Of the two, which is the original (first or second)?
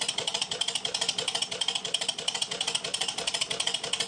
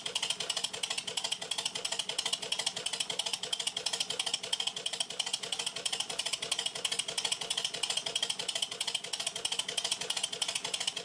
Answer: second